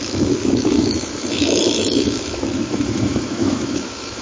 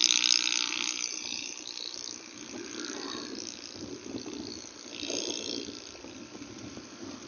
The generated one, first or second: first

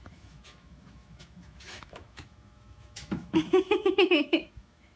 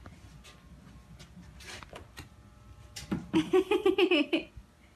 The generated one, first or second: first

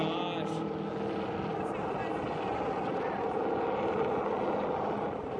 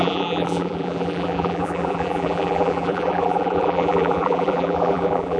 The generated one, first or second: second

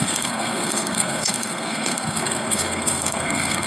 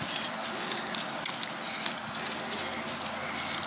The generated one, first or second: first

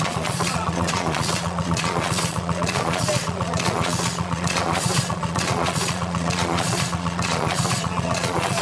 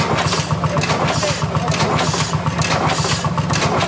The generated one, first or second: first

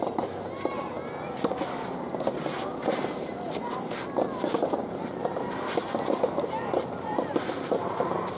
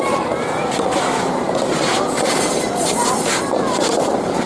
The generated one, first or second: second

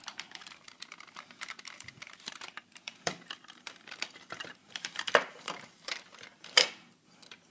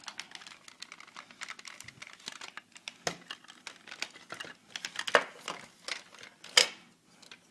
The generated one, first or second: first